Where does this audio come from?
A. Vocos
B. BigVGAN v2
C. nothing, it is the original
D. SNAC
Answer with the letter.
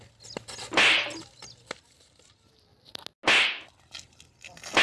C